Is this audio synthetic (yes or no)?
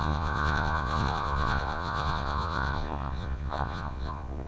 yes